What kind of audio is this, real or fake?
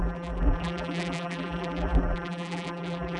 fake